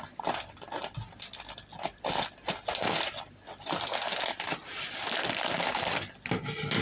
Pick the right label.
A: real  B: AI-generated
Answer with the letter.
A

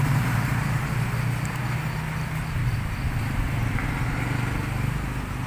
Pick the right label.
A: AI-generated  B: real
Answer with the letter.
B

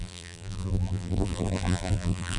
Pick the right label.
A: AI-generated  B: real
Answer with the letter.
A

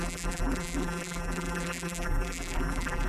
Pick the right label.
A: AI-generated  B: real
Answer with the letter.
A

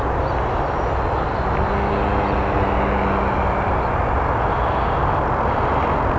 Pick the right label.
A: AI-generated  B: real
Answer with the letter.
B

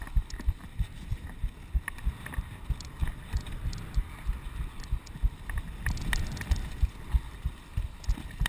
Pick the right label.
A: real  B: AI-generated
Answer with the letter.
B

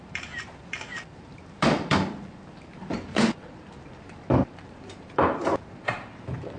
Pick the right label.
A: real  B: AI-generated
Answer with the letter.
B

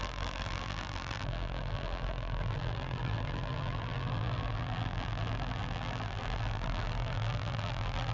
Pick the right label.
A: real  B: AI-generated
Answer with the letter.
B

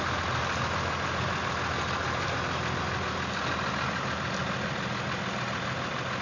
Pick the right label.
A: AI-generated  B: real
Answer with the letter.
B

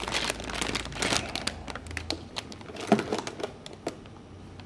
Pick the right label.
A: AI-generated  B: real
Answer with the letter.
B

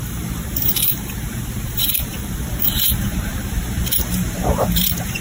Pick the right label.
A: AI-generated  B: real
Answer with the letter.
A